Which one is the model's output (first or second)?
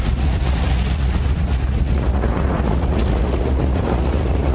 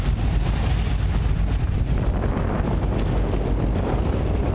first